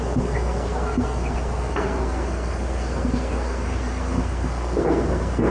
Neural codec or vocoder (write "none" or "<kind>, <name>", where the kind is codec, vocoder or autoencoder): codec, SNAC